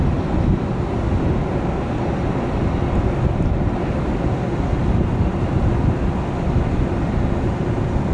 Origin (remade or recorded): recorded